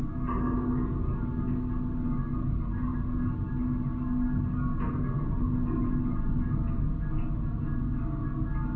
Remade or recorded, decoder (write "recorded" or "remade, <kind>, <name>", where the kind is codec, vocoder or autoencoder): recorded